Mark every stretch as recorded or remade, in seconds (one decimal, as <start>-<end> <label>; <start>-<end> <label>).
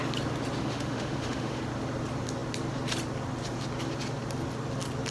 0.0-0.6 recorded; 0.6-1.6 remade; 1.6-5.1 recorded